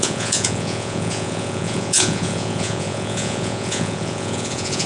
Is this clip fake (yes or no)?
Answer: yes